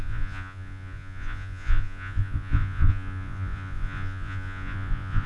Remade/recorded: remade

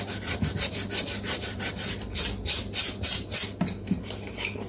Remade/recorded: recorded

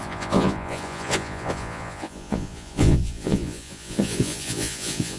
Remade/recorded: remade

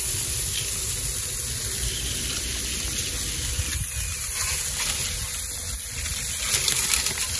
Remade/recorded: recorded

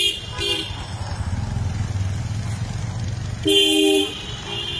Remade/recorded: recorded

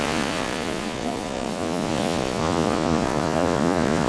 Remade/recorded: remade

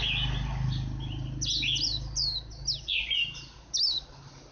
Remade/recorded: recorded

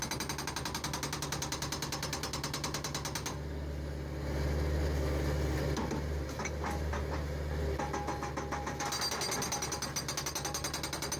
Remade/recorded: recorded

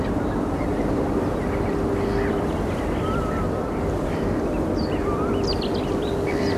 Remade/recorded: remade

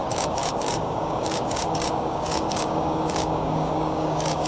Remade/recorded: remade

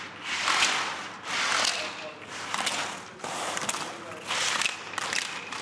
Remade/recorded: recorded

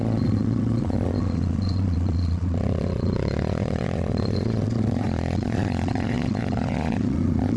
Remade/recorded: remade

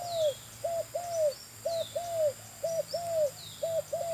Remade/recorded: recorded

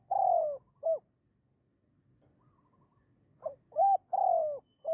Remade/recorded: recorded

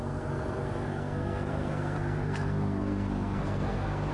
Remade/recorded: remade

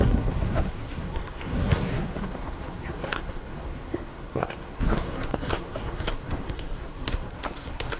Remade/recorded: remade